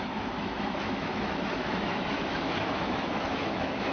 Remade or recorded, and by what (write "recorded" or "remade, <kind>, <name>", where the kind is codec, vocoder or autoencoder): remade, autoencoder, DAC-VAE